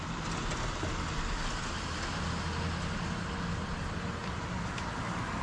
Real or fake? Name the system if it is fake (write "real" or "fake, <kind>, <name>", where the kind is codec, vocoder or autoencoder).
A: real